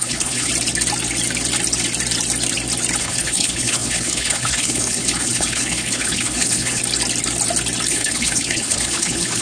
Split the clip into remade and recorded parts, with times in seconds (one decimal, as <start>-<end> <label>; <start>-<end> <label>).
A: 0.0-0.5 remade; 0.5-3.0 recorded; 3.0-6.8 remade; 6.8-7.9 recorded; 7.9-9.4 remade